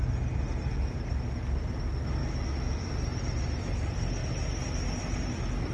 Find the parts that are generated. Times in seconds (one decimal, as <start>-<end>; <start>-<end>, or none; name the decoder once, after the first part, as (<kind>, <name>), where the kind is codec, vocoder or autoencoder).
2.2-2.9 (autoencoder, DAC-VAE)